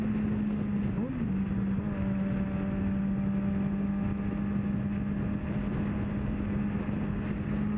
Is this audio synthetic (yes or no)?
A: no